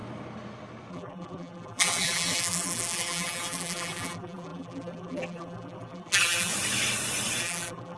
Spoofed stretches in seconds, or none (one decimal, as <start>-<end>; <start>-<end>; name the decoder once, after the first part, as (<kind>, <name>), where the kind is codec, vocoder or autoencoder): 0.9-6.5 (vocoder, BigVGAN v2); 7.4-8.0